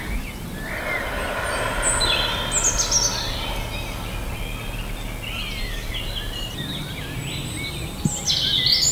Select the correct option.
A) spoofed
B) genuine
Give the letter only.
B